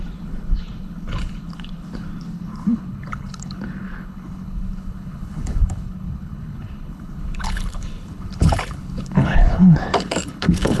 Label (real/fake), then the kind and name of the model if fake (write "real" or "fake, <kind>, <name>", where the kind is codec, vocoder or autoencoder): fake, codec, HILCodec